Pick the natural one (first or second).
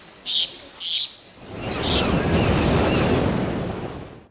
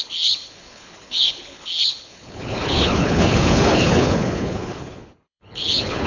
first